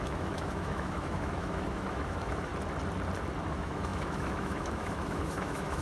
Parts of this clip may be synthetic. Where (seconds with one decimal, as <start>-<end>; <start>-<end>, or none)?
0.0-2.5; 3.5-5.8